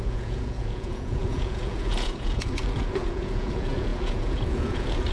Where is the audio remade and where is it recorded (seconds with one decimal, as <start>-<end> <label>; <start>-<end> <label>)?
0.0-5.1 remade